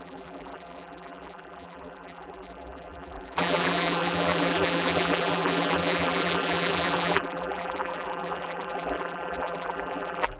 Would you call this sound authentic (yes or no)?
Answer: no